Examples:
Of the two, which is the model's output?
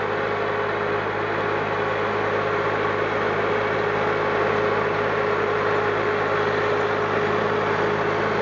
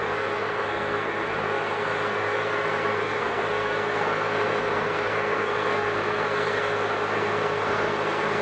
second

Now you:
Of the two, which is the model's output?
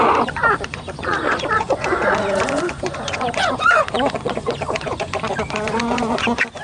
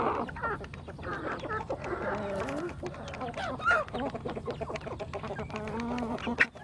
first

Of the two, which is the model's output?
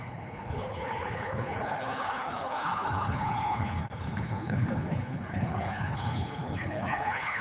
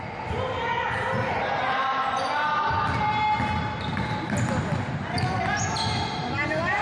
first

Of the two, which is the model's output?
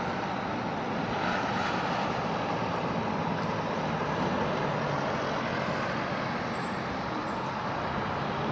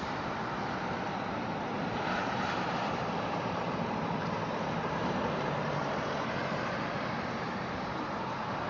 second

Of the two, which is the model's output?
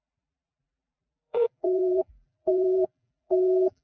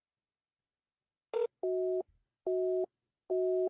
first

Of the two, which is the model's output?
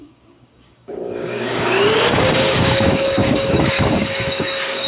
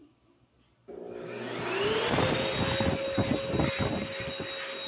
first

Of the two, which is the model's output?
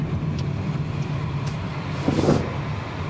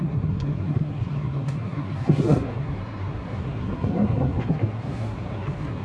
second